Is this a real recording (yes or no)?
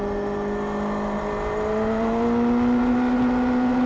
yes